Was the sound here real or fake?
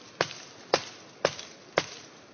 real